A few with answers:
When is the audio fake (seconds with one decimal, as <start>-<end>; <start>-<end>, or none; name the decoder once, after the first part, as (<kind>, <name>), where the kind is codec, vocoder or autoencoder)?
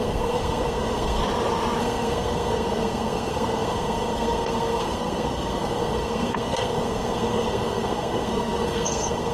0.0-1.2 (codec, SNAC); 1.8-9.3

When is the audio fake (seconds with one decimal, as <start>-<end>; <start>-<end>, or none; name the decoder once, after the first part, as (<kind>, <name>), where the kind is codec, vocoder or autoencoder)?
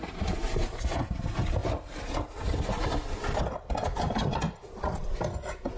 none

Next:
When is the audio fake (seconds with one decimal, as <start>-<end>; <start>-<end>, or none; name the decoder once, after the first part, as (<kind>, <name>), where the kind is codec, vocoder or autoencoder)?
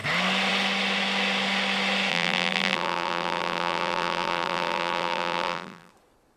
2.1-5.9 (vocoder, BigVGAN v2)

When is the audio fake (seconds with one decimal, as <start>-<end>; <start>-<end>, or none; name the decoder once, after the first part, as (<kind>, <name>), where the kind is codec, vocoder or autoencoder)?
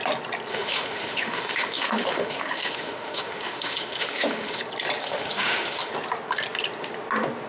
0.5-4.6 (autoencoder, DAC-VAE); 5.0-5.9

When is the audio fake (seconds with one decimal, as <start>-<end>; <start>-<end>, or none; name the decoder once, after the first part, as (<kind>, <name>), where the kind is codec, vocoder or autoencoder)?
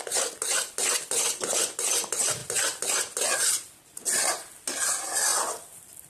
none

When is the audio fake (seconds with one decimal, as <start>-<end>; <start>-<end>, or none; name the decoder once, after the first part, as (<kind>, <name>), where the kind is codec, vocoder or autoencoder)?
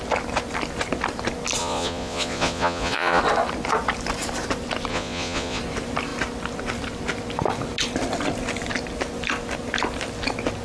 1.6-3.2 (vocoder, Vocos); 4.9-5.6